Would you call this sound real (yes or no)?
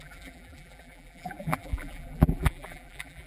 no